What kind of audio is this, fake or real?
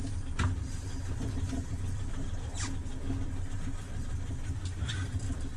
real